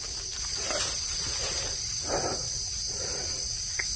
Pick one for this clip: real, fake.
real